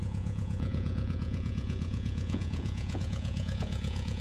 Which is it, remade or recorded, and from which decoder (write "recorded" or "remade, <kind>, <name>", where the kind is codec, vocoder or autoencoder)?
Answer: remade, vocoder, Vocos